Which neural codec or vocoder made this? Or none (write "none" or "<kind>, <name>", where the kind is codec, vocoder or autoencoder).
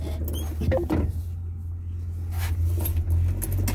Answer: none